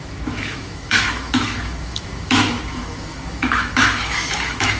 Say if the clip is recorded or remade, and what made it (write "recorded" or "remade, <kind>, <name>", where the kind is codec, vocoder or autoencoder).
remade, autoencoder, DAC-VAE